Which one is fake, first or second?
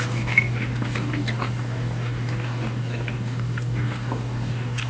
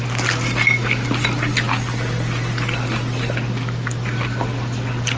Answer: first